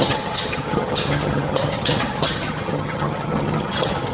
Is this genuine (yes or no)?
no